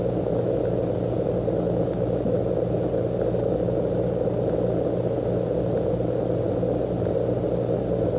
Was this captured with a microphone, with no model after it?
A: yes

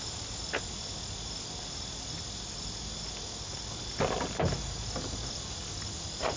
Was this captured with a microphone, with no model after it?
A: yes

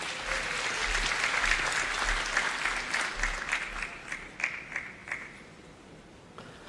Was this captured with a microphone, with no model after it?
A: yes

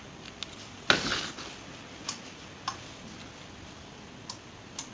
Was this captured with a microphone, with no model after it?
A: yes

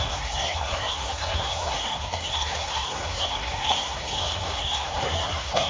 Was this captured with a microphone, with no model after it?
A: no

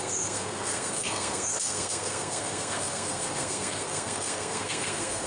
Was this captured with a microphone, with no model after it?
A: no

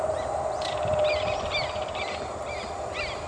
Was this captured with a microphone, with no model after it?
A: no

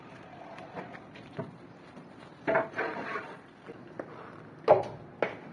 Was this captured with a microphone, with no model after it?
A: yes